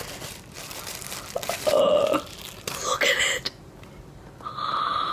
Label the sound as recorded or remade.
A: recorded